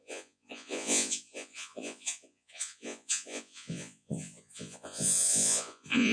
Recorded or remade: remade